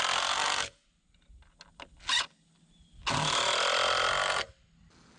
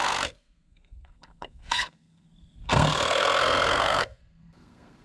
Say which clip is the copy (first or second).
second